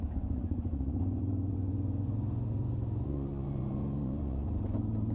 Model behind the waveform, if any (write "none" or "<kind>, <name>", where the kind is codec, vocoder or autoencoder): vocoder, Vocos